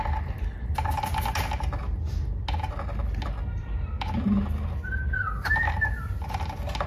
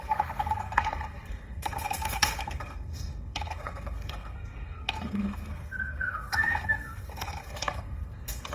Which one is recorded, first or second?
first